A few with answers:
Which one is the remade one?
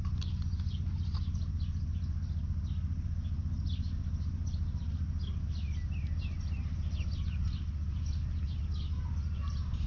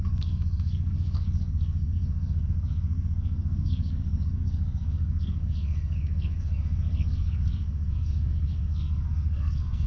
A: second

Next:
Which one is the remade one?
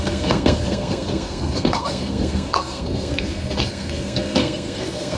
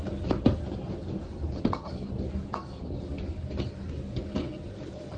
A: first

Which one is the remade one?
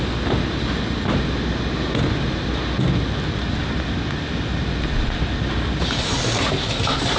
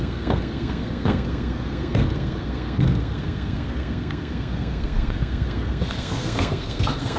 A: second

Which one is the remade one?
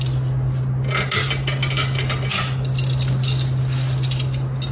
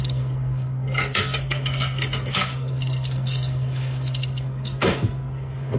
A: second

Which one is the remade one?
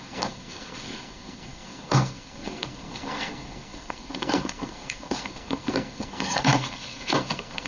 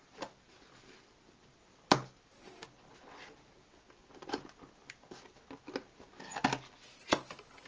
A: first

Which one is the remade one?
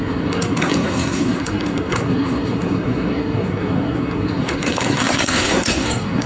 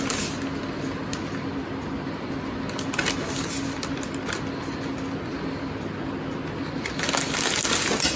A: first